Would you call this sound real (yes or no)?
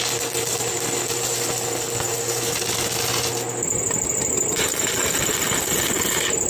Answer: yes